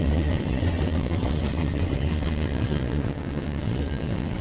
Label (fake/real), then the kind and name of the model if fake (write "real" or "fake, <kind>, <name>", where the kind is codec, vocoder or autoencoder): fake, vocoder, WaveNeXt